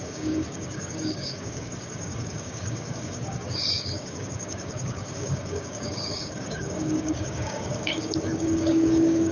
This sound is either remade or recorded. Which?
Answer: remade